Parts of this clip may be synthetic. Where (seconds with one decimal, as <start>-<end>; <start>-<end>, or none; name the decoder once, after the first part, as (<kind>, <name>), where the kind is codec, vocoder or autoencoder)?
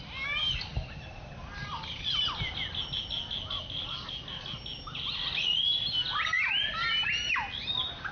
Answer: none